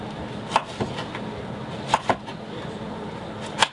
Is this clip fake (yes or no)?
no